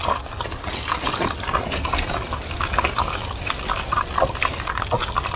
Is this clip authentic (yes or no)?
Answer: yes